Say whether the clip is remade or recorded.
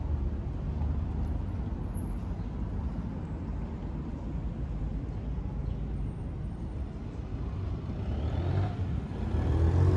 recorded